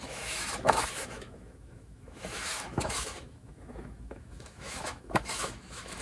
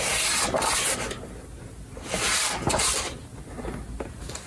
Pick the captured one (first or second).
second